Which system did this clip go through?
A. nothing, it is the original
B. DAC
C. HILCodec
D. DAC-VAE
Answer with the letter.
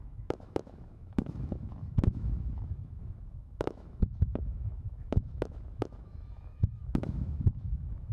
D